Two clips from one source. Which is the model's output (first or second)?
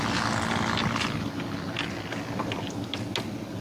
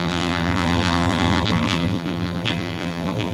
second